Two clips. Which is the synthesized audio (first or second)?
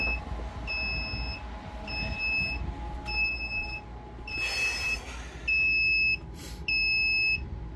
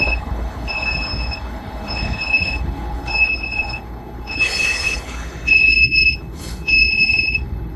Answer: second